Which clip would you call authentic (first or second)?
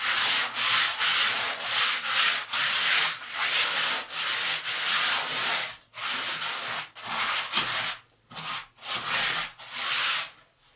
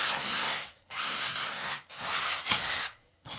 first